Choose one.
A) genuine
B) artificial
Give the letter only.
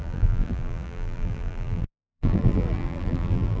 B